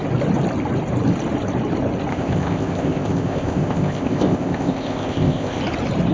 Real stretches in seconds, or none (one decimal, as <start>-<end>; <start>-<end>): 0.0-2.1; 5.6-6.1